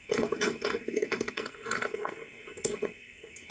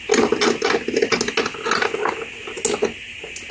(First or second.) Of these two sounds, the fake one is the first